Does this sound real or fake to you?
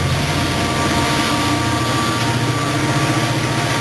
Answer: real